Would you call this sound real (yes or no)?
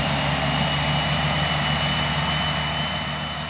yes